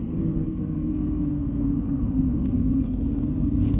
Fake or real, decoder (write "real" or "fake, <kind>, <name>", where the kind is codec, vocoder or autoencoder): fake, codec, SNAC